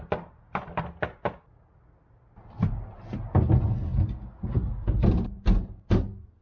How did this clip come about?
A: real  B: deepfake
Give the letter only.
A